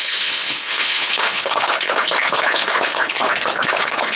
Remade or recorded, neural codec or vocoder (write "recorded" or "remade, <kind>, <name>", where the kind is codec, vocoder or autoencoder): remade, codec, HILCodec